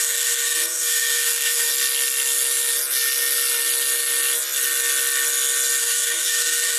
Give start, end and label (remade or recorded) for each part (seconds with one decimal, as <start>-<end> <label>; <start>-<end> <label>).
0.0-1.7 remade; 1.7-5.8 recorded; 5.8-6.8 remade